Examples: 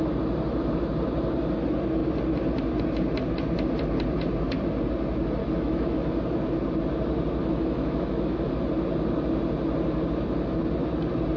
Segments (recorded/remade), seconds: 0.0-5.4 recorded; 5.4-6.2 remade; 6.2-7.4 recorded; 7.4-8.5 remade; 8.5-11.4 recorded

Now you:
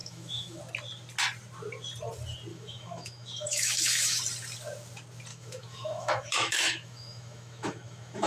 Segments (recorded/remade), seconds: 0.0-0.6 remade; 0.6-2.5 recorded; 2.5-4.2 remade; 4.2-5.3 recorded; 5.3-8.3 remade

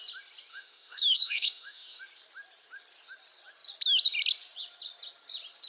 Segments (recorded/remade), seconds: 0.0-0.5 recorded; 0.5-2.0 remade; 2.0-5.7 recorded

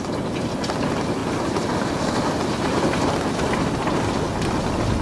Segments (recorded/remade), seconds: 0.0-5.0 recorded

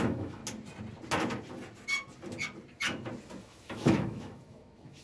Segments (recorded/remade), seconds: 0.0-0.4 remade; 0.4-3.4 recorded; 3.4-5.0 remade

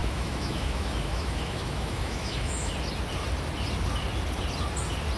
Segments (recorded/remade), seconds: 0.0-2.7 remade; 2.7-5.2 recorded